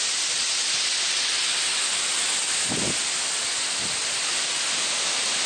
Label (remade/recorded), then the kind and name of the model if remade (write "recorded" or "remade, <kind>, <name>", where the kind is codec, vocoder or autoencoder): recorded